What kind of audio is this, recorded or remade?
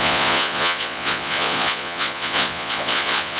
remade